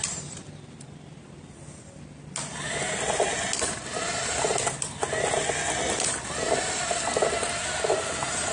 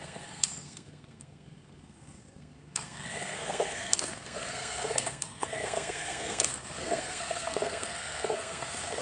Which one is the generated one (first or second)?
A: second